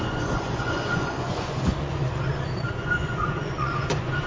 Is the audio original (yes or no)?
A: no